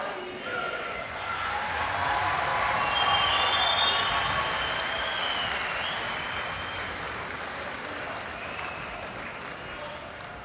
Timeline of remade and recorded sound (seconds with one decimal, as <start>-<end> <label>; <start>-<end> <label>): 0.0-0.5 recorded; 0.5-1.6 remade; 1.6-10.4 recorded